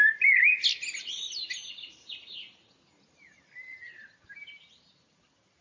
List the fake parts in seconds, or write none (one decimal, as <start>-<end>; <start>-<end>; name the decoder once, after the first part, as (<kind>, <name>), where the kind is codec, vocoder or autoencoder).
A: none